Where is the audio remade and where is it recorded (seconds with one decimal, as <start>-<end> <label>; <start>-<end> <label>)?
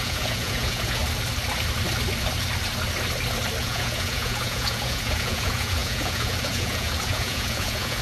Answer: 0.0-1.0 remade; 1.0-3.6 recorded; 3.6-8.0 remade